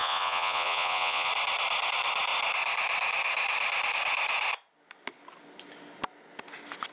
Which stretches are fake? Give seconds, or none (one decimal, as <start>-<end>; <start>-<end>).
0.0-1.3